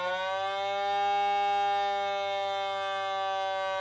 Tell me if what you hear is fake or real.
real